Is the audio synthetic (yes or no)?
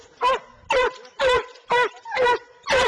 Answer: no